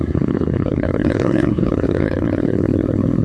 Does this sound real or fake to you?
fake